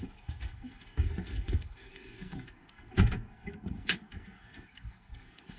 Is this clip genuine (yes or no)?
no